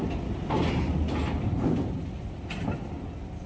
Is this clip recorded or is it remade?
recorded